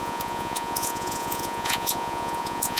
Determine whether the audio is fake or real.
fake